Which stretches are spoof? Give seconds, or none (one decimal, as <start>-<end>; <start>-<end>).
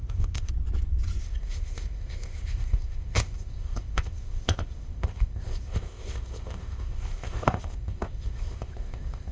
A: 0.0-0.5; 1.2-9.3